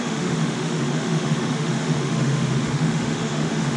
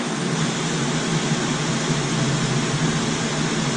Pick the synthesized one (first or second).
first